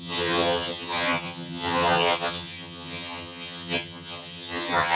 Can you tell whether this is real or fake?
fake